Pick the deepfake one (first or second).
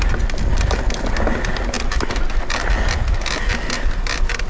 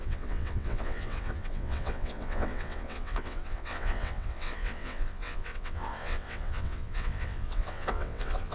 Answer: second